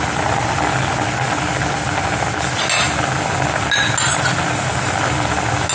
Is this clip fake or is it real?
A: real